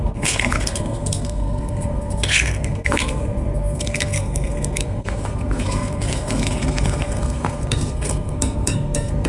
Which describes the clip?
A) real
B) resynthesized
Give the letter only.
B